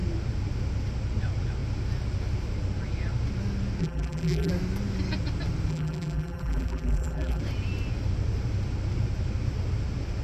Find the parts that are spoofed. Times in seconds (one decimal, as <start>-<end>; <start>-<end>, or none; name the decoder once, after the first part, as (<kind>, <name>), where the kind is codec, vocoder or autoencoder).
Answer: 3.8-4.5 (vocoder, BigVGAN v2); 5.7-7.4